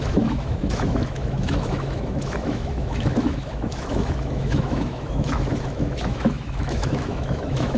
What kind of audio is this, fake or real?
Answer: fake